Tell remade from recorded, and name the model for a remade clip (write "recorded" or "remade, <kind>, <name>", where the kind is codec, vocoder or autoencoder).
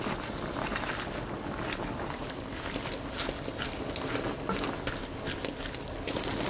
recorded